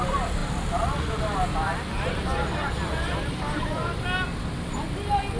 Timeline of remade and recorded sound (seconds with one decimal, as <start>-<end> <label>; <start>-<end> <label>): 0.0-5.4 recorded